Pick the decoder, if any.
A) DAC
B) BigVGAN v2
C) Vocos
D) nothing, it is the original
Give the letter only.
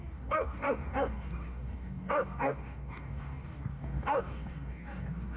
A